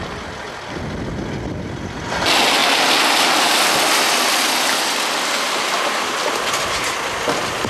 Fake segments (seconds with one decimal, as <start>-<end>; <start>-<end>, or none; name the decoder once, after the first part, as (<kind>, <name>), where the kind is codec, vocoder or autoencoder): none